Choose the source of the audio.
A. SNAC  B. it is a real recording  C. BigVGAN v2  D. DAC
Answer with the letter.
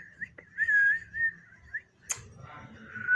B